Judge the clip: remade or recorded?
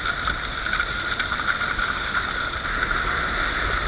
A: recorded